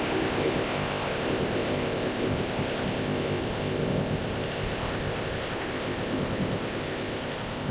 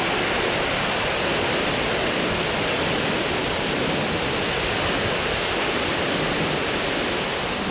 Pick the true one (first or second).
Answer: second